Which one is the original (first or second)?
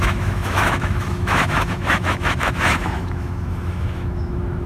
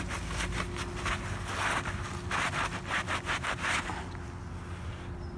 second